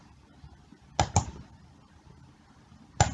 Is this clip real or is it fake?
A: real